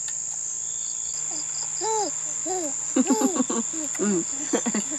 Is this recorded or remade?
recorded